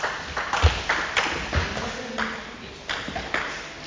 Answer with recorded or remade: recorded